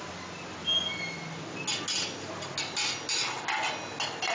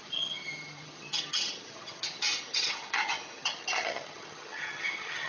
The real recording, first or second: first